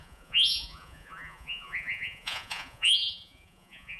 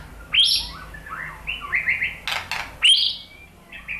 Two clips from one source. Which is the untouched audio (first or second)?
second